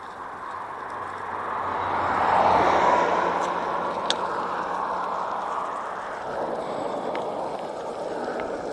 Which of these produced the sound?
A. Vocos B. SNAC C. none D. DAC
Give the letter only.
C